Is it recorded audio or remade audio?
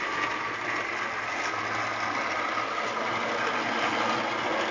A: recorded